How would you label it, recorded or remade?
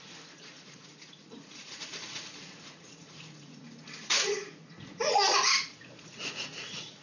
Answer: remade